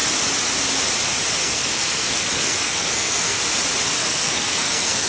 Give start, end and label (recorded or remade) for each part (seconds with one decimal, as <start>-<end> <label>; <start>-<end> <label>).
0.0-1.4 recorded; 1.4-3.4 remade; 3.4-4.0 recorded; 4.0-5.1 remade